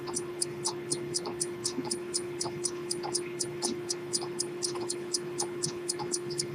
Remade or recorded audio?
remade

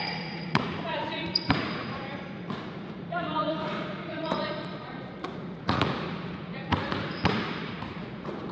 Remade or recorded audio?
remade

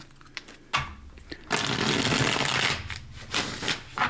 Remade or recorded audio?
recorded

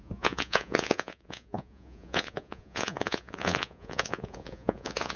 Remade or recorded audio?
remade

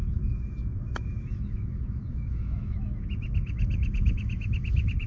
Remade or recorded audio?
remade